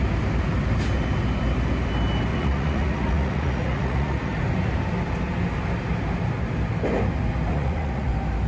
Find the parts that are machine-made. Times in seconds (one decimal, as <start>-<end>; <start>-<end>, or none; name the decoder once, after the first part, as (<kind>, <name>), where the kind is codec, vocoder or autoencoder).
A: 2.3-4.4 (vocoder, Vocos); 7.5-8.1